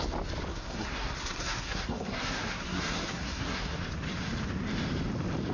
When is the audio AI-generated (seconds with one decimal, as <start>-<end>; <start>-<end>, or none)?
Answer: 0.5-3.8